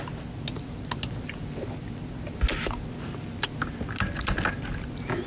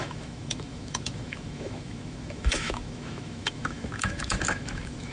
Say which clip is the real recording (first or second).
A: first